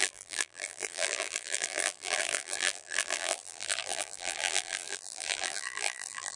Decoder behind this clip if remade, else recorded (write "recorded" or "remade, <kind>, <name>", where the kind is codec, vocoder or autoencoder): remade, vocoder, BigVGAN v2